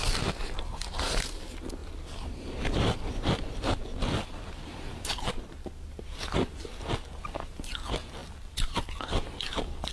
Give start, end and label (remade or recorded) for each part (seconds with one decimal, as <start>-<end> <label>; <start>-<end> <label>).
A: 0.0-1.8 recorded; 1.8-5.2 remade; 5.2-8.2 recorded; 8.2-9.1 remade; 9.1-9.9 recorded